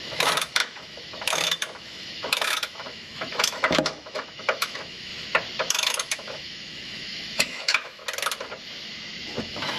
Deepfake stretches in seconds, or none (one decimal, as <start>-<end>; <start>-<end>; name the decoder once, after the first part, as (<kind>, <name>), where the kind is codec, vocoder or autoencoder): 0.0-5.1 (autoencoder, DAC-VAE); 5.7-8.0; 9.4-9.8